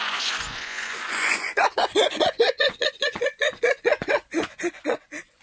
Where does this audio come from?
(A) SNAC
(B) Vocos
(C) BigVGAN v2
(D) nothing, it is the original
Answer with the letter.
B